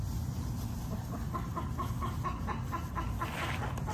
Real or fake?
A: real